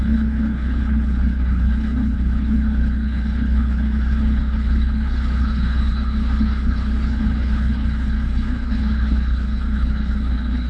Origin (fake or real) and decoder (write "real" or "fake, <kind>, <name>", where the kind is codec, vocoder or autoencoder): fake, codec, HILCodec